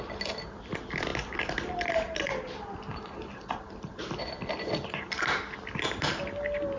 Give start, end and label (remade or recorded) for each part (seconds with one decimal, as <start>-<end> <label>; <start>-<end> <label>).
0.0-6.8 recorded